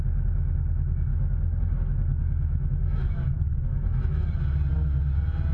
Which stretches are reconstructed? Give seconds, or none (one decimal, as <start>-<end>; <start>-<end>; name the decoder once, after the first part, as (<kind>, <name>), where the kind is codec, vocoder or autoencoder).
1.1-4.4 (autoencoder, DAC-VAE)